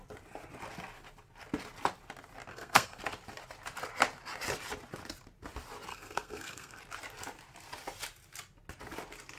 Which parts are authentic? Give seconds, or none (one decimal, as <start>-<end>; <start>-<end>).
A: 0.0-2.5; 3.0-5.9; 6.8-9.4